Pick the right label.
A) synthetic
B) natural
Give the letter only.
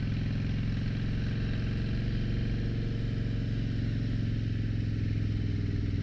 B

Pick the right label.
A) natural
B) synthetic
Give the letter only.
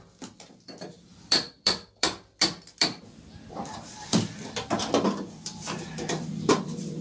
B